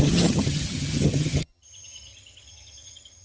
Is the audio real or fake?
fake